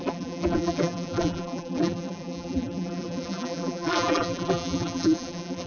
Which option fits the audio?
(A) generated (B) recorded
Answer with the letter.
A